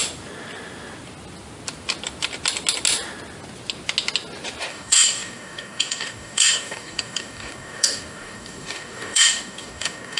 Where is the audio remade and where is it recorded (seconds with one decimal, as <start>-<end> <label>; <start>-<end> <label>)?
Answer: 0.0-4.7 recorded; 4.7-10.2 remade